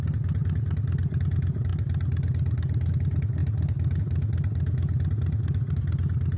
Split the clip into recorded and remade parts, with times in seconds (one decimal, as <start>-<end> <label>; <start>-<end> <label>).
0.0-6.4 recorded